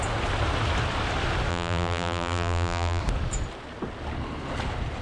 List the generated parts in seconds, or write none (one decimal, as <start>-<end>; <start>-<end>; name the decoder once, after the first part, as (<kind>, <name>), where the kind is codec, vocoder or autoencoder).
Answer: 1.5-3.0 (vocoder, BigVGAN v2)